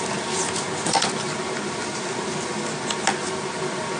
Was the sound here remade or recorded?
recorded